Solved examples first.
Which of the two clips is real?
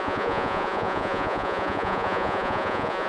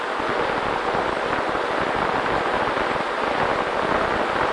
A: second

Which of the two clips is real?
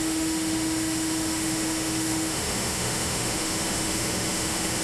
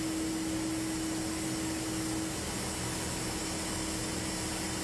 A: second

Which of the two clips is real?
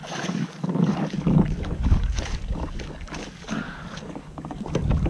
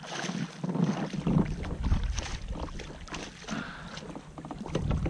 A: second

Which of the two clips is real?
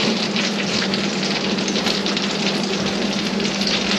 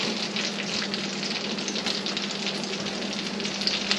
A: second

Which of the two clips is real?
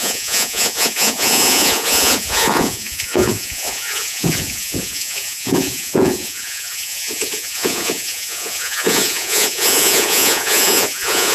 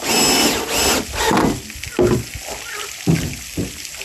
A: second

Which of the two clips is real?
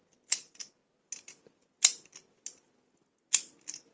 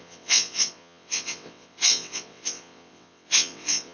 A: first